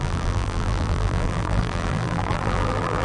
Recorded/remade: remade